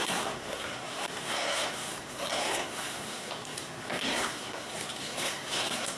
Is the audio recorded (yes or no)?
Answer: no